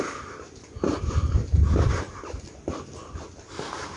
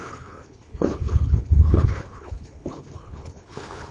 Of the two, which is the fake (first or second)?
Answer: second